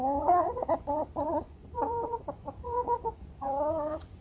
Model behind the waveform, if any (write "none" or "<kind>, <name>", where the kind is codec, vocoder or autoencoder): vocoder, Vocos